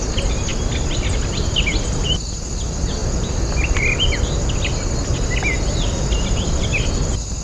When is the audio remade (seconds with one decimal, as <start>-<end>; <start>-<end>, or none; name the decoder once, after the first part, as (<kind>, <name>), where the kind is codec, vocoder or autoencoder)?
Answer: none